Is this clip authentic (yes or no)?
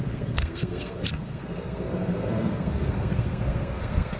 no